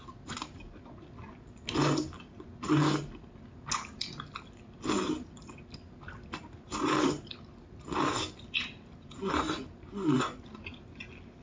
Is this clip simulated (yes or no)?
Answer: no